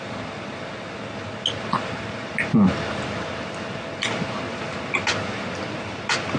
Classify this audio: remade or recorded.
recorded